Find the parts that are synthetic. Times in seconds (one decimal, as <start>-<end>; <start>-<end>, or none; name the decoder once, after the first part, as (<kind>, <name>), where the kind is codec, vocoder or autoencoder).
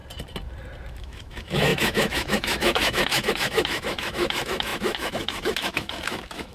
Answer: 0.9-6.5 (autoencoder, DAC-VAE)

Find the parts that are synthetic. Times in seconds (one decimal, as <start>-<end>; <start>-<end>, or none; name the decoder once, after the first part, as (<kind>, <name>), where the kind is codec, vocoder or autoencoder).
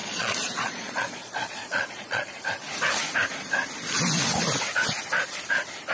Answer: 0.0-2.4 (vocoder, Vocos)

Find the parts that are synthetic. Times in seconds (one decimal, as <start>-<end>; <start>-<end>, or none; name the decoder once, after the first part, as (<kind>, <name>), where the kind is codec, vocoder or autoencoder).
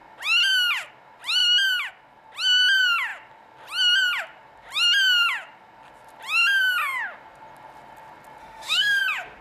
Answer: 8.4-9.0 (autoencoder, DAC-VAE)